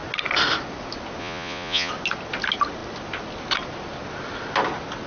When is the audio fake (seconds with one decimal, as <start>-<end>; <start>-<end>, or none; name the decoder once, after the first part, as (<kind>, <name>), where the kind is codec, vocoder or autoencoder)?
1.2-1.9 (vocoder, Vocos)